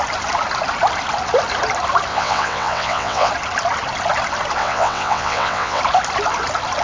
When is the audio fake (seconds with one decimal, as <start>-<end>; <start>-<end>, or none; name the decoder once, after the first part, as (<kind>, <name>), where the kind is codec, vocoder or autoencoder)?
2.1-3.3 (vocoder, WaveNeXt); 4.6-5.8